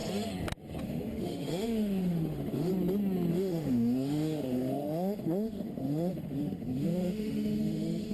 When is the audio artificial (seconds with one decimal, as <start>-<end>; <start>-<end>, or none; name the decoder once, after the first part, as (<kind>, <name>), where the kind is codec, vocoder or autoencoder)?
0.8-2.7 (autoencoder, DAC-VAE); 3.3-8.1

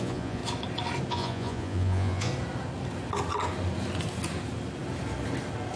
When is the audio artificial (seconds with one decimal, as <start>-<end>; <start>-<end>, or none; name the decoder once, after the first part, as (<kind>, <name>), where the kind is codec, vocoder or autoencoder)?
0.0-0.4 (vocoder, Vocos); 1.1-2.3

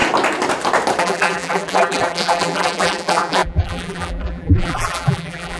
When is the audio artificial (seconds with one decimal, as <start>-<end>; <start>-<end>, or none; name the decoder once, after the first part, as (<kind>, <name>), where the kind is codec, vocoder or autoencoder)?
1.0-5.6 (vocoder, BigVGAN v2)

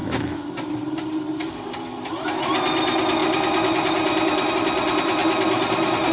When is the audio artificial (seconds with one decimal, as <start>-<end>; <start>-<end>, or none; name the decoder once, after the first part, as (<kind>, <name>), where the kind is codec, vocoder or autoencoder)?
none

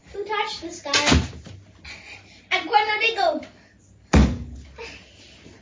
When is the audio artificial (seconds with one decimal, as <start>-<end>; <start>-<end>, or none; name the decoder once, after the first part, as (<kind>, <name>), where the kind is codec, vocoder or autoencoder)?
none